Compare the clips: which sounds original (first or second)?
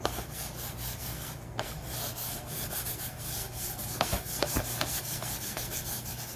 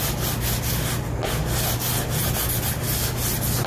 second